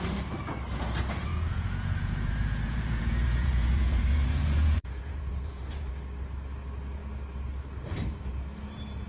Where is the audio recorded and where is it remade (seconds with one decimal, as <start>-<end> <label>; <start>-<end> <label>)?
0.0-1.3 recorded; 1.3-5.9 remade; 5.9-9.1 recorded